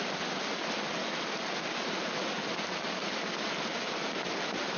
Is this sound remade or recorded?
recorded